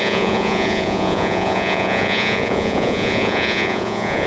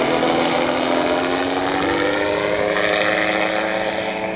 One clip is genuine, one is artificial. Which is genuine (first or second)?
second